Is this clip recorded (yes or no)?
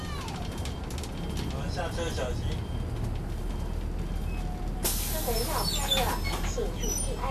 yes